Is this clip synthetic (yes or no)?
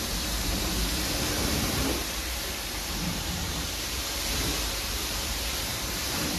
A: yes